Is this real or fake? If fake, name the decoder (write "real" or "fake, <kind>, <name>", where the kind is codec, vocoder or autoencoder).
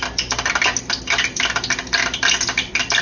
real